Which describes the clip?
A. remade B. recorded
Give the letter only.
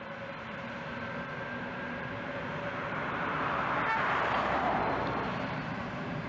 A